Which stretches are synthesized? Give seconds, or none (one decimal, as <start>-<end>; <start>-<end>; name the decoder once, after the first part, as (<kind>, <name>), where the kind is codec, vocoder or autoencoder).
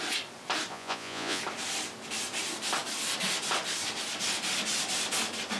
0.7-1.4 (vocoder, Vocos)